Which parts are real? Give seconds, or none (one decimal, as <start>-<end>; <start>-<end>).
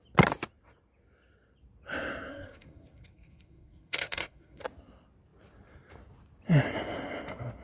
0.0-2.3; 4.6-7.6